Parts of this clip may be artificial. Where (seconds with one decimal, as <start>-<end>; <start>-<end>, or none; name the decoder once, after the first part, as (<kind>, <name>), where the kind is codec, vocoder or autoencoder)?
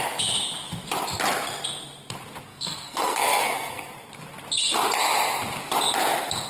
2.5-3.9 (codec, SNAC)